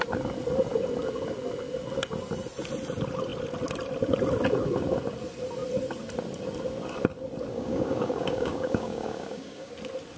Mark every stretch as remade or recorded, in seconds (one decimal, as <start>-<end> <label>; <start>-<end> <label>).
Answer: 0.0-7.5 recorded; 7.5-9.7 remade; 9.7-10.2 recorded